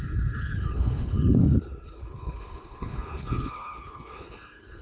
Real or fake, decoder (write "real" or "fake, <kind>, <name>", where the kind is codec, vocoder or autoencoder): fake, codec, HILCodec